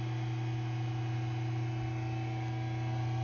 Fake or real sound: real